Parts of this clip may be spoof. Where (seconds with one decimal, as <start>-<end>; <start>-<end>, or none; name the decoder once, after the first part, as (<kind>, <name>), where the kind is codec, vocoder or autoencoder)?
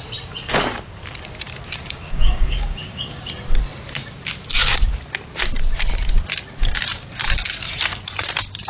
1.8-3.3 (codec, DAC)